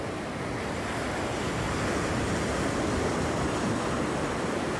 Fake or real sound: real